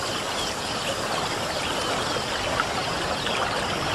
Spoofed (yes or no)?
yes